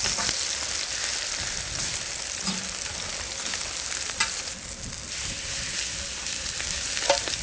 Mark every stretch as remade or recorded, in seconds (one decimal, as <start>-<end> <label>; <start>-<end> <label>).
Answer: 0.0-1.1 recorded; 1.1-2.9 remade; 2.9-7.4 recorded